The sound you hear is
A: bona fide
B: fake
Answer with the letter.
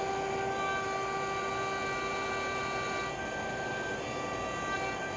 A